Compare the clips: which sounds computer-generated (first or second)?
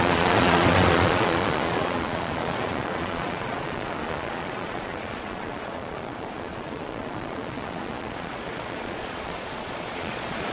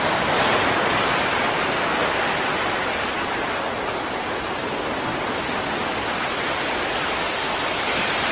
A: first